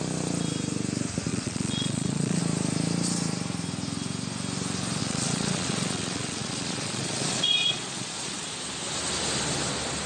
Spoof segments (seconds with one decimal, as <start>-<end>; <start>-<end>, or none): 1.3-2.4; 5.0-8.5